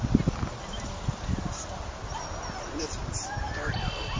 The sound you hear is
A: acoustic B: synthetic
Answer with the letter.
A